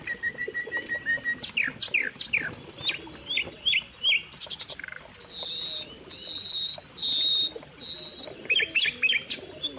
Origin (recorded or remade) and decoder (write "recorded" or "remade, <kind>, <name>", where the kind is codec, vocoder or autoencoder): recorded